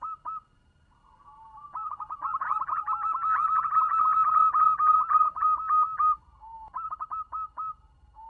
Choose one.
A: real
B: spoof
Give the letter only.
A